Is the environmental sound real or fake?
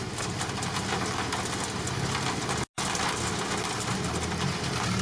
real